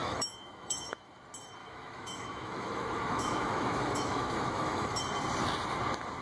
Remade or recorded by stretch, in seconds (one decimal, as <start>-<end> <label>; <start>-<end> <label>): 0.0-1.1 remade; 1.1-1.6 recorded; 1.6-5.0 remade; 5.0-6.2 recorded